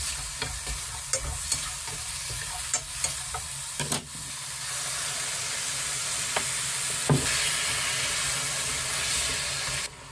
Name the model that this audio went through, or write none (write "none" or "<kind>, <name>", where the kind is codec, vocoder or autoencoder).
none